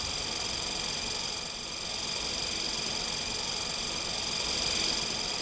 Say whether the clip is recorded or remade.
recorded